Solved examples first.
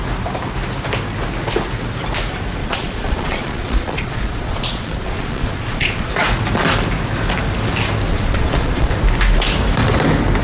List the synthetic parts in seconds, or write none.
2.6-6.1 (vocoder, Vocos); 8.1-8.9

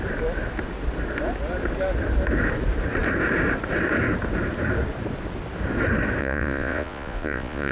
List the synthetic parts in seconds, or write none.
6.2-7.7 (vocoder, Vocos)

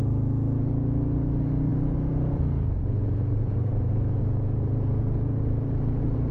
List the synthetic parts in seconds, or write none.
1.7-5.4 (vocoder, Vocos)

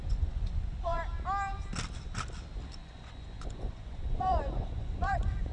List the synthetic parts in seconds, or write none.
0.0-1.0 (vocoder, Vocos); 2.8-5.5

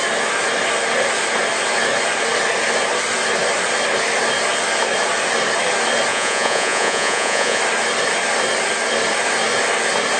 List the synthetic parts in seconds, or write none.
6.1-7.6 (vocoder, Vocos)

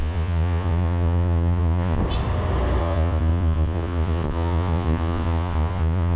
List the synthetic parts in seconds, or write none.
0.0-2.0 (vocoder, Vocos); 2.8-6.2